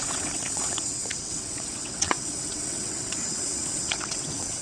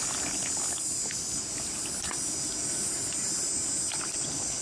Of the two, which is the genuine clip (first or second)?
second